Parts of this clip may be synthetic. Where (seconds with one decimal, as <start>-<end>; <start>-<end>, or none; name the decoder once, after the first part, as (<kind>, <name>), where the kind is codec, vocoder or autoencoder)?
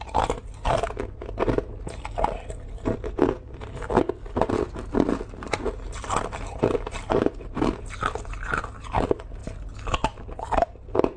none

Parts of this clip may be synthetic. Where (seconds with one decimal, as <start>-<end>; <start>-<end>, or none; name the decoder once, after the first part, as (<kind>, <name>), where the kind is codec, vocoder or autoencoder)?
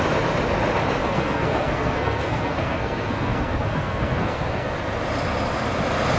1.0-4.7 (codec, SNAC)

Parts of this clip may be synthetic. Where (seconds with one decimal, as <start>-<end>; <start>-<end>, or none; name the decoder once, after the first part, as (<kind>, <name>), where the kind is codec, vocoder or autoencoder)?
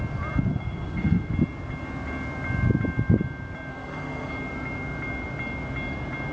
0.5-1.3 (codec, SNAC); 3.7-4.3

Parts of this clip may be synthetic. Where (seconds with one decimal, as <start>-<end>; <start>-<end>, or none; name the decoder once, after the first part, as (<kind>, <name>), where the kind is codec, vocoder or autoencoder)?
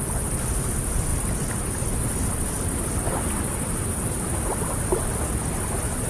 none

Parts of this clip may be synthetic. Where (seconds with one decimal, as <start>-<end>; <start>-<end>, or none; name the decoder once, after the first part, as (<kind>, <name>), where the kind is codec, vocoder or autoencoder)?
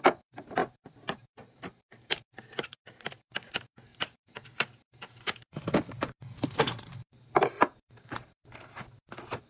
0.6-3.1 (vocoder, BigVGAN v2); 3.9-8.8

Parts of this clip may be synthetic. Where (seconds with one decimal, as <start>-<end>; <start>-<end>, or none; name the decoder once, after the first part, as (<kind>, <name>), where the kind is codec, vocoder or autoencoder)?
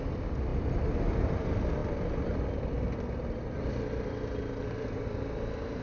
none